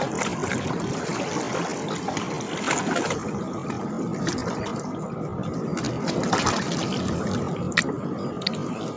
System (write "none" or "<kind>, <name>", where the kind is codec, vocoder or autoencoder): none